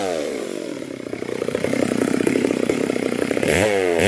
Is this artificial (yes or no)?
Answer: yes